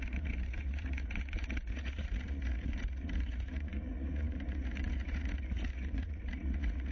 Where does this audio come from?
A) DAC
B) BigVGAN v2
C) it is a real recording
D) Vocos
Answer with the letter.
D